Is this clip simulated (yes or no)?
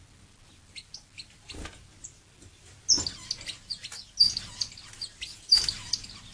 no